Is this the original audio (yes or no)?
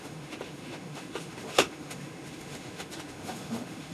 no